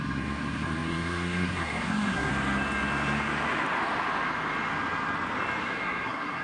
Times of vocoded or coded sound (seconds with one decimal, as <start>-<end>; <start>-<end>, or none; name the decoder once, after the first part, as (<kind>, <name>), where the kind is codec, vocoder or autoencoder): 0.0-2.3 (codec, SNAC); 5.6-6.4